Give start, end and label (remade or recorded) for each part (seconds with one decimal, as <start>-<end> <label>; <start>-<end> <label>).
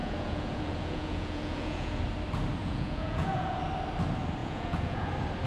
0.0-2.0 remade; 2.0-2.6 recorded; 2.6-3.6 remade; 3.6-4.4 recorded; 4.4-5.1 remade; 5.1-5.5 recorded